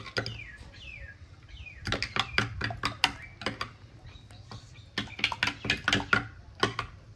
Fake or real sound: real